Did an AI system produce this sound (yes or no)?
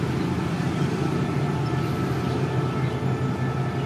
no